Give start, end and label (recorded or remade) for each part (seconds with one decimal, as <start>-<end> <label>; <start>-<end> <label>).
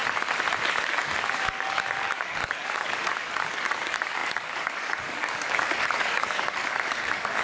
0.0-0.7 recorded; 0.7-7.4 remade